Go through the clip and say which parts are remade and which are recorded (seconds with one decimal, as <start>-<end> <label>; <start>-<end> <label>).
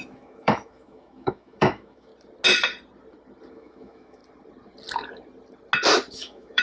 0.0-2.1 remade; 2.1-3.5 recorded; 3.5-4.2 remade; 4.2-6.1 recorded; 6.1-6.6 remade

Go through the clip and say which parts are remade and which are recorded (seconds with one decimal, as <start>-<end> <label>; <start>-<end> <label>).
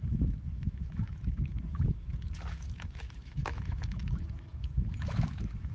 0.0-5.7 remade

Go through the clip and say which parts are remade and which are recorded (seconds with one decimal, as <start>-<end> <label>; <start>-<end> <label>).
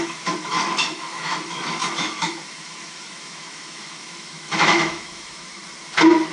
0.0-5.6 remade; 5.6-6.3 recorded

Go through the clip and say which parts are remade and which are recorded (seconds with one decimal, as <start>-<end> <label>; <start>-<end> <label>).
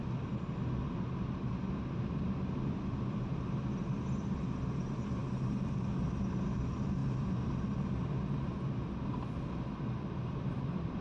0.0-11.0 recorded